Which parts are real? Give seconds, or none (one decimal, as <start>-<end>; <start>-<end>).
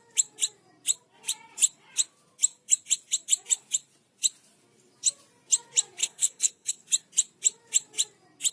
0.0-6.0; 6.7-8.5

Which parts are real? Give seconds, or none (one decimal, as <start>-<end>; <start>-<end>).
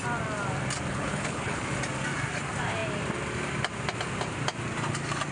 0.0-0.9; 1.6-5.3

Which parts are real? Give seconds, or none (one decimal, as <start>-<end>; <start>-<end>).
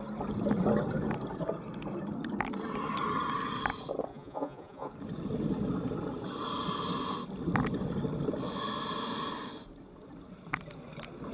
0.0-4.1; 4.9-11.3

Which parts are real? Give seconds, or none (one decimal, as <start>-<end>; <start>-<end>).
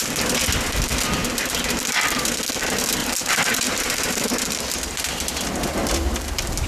0.0-3.0; 4.3-5.8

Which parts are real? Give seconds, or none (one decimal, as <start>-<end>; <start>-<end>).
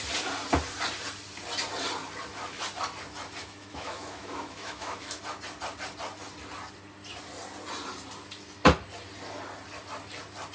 0.0-3.4; 5.2-10.5